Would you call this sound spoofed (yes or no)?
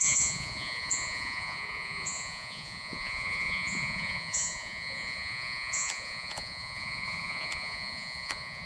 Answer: yes